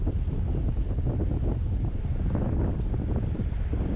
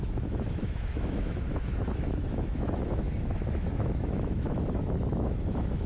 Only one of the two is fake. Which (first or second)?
second